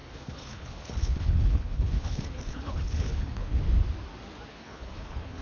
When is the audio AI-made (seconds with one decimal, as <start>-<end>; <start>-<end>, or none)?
0.0-3.6; 4.5-5.4